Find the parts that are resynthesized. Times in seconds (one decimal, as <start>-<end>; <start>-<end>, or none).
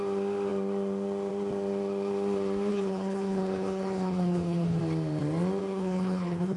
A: 2.7-4.8; 5.6-6.6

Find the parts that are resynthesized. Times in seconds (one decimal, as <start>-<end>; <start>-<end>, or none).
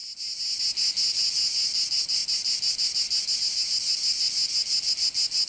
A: none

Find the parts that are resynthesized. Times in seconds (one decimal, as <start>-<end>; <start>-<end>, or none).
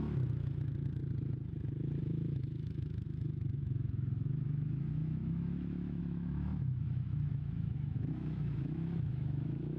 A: 0.0-1.0; 2.0-9.8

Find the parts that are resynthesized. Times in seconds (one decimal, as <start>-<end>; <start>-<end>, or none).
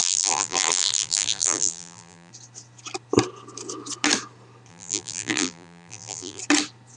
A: 0.0-2.3; 4.7-6.4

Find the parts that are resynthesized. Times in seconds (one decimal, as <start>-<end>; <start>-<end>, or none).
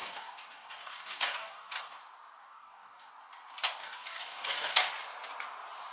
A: 0.0-2.0; 2.4-3.1; 3.8-4.9